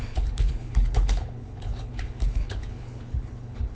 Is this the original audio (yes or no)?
no